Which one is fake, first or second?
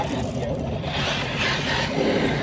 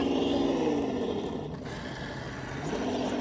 first